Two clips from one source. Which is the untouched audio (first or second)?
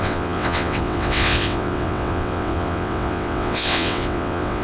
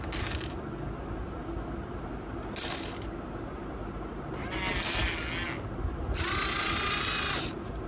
second